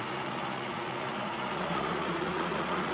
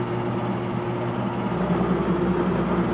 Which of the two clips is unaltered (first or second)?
second